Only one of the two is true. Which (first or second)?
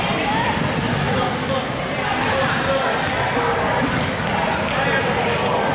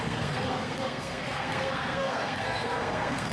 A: first